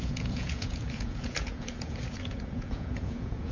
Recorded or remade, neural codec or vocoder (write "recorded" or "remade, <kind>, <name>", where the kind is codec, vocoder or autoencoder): remade, vocoder, Vocos